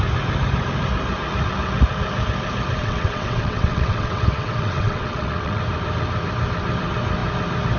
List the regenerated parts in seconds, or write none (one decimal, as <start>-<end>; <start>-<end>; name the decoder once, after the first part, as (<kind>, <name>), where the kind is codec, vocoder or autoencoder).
2.8-5.6 (vocoder, WaveNeXt)